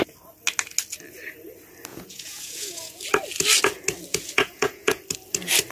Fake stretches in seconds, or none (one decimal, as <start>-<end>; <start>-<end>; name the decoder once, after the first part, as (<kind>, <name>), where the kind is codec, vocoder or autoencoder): 1.9-3.0 (vocoder, Vocos); 4.1-5.0